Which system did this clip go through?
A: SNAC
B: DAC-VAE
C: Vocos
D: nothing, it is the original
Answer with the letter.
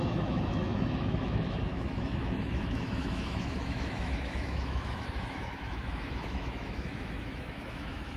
B